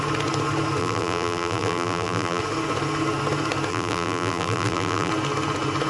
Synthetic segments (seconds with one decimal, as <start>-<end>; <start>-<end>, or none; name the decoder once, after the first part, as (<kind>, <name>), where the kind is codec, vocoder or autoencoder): 0.8-2.4 (vocoder, BigVGAN v2); 3.7-5.1